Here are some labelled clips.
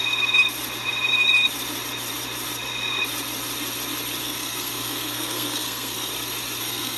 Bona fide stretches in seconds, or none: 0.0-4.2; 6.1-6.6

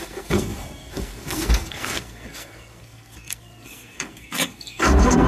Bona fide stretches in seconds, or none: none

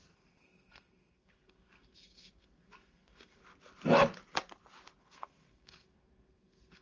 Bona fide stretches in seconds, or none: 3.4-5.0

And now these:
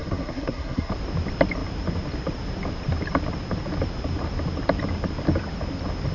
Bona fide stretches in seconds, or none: 0.9-6.1

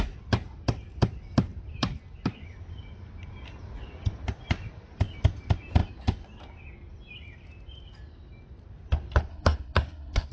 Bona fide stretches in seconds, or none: 0.0-9.3

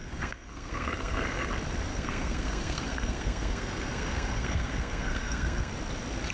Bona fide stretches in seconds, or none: 1.5-1.9; 5.7-6.3